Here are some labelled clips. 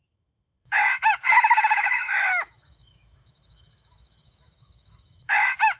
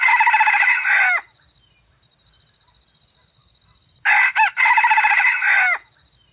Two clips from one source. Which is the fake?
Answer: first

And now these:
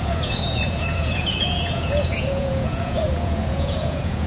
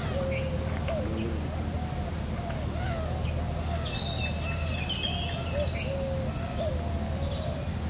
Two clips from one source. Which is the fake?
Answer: first